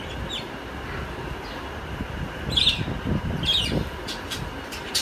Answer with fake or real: real